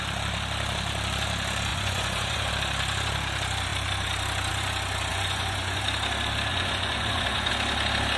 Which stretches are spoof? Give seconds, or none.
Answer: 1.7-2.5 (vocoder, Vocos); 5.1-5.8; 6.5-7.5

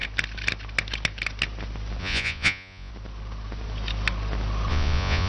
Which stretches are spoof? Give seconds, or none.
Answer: 2.0-2.9 (vocoder, Vocos); 4.7-5.3

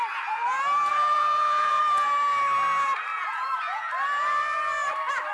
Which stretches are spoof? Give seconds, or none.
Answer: 0.9-1.8 (vocoder, Vocos); 3.1-3.9

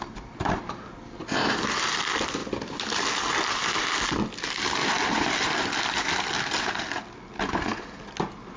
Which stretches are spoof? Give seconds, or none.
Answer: none